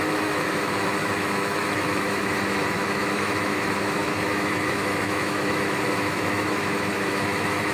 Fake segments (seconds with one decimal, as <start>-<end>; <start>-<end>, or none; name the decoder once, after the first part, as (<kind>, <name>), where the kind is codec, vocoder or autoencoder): 0.0-7.7 (autoencoder, DAC-VAE)